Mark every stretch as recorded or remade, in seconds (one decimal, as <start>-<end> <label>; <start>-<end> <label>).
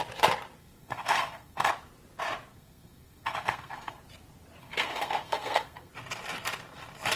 0.0-0.6 recorded; 0.6-1.7 remade; 1.7-2.5 recorded; 2.5-4.0 remade; 4.0-4.6 recorded; 4.6-5.9 remade; 5.9-7.2 recorded